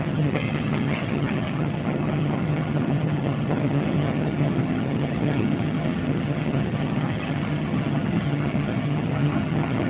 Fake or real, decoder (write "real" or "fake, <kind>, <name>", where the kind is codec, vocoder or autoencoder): fake, vocoder, HiFi-GAN